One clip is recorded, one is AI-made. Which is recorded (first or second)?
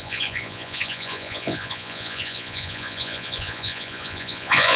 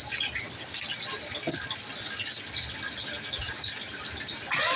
second